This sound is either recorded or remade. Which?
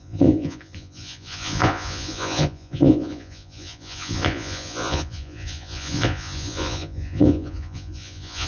remade